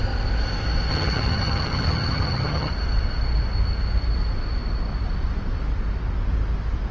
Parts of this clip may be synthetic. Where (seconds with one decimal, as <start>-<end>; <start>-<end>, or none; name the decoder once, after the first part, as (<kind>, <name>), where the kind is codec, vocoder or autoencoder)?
0.9-2.7 (vocoder, HiFi-GAN)